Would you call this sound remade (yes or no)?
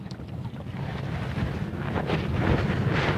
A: no